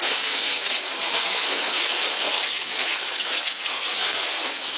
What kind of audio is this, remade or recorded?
remade